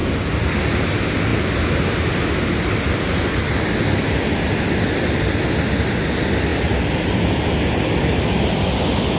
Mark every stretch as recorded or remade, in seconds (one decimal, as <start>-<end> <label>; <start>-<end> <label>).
0.0-1.3 recorded; 1.3-3.6 remade; 3.6-9.2 recorded